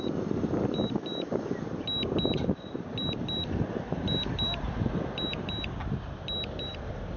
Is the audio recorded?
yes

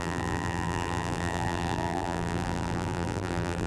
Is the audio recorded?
no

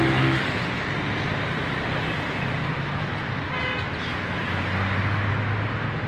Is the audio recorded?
yes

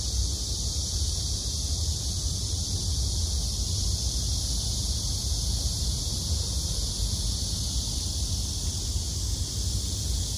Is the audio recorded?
yes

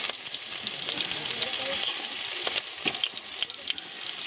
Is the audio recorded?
yes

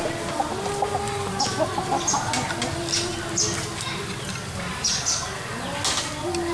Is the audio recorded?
yes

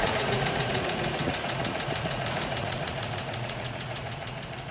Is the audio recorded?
no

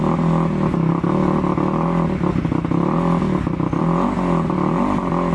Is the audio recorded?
yes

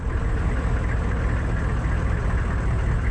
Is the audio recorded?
yes